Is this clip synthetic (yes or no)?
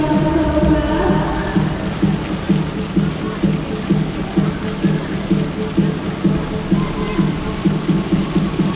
no